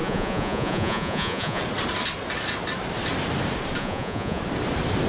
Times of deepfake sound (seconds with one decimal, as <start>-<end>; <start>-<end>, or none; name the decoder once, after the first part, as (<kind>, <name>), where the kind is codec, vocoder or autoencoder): 0.0-1.6 (vocoder, Vocos); 3.8-4.4